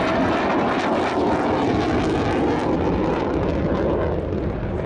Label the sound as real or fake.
real